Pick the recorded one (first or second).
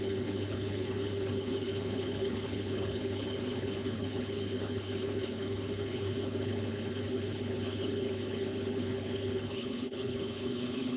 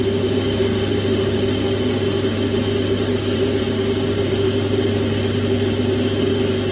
second